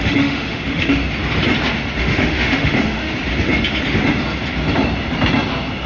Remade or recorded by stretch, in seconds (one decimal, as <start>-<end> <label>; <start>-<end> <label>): 0.0-1.0 remade; 1.0-2.0 recorded; 2.0-3.1 remade; 3.1-5.9 recorded